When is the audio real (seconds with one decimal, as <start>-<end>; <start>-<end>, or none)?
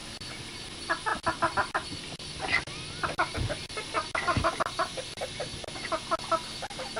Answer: 0.0-7.0